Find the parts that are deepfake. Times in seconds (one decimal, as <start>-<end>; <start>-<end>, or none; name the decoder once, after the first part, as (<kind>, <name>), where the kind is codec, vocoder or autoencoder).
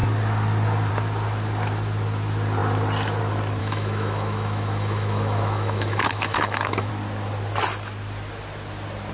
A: 3.6-6.9 (autoencoder, DAC-VAE)